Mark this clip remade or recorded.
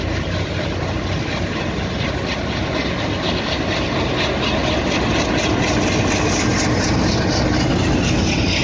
recorded